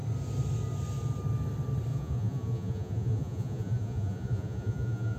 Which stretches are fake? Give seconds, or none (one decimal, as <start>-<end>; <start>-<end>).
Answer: 1.9-5.2